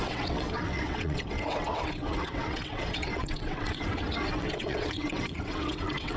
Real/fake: fake